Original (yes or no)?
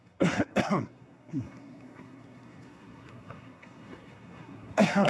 no